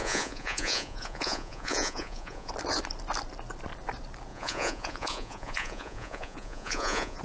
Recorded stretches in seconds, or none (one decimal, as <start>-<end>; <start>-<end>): 2.5-4.3